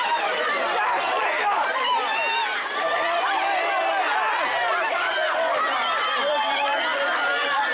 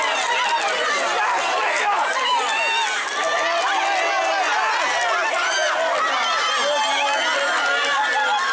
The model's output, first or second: first